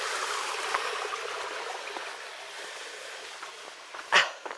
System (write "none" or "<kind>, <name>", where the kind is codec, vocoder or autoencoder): none